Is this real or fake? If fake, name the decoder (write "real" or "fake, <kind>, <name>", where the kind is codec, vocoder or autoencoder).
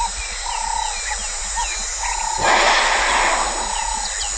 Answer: real